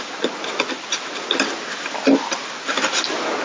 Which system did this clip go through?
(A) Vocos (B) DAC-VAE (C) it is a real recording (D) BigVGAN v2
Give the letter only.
C